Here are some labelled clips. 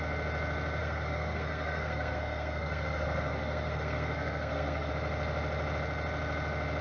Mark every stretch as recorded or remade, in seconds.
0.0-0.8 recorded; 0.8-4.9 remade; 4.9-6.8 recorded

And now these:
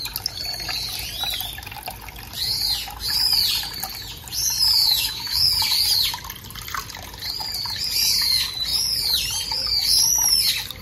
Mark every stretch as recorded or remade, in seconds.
0.0-4.8 recorded; 4.8-5.5 remade; 5.5-10.8 recorded

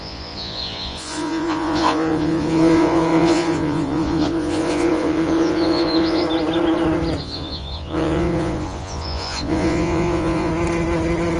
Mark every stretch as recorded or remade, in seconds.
0.0-6.2 remade; 6.2-7.2 recorded; 7.2-10.5 remade; 10.5-11.4 recorded

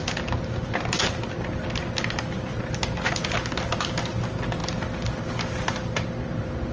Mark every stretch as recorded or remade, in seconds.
0.0-6.7 recorded

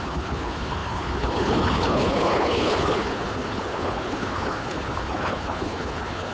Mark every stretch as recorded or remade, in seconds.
0.0-6.3 remade

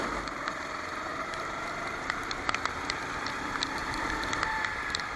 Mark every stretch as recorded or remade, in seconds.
0.0-1.1 recorded; 1.1-3.3 remade; 3.3-3.8 recorded; 3.8-5.2 remade

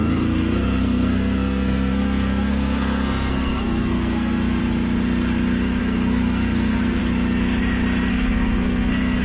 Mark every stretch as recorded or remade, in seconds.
0.0-4.6 remade; 4.6-5.8 recorded; 5.8-7.0 remade; 7.0-8.1 recorded; 8.1-9.2 remade

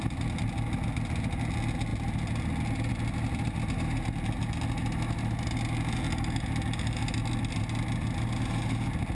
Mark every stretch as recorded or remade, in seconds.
0.0-9.1 recorded